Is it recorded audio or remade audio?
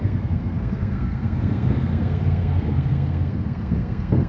remade